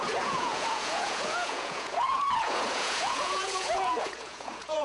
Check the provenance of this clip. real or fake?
fake